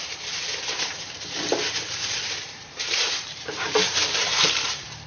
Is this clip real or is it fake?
fake